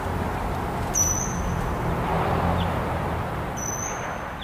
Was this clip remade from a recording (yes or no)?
no